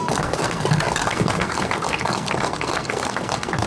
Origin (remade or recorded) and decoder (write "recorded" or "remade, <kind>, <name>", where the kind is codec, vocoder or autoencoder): remade, codec, SNAC